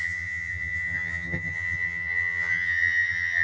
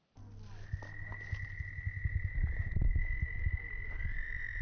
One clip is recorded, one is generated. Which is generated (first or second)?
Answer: first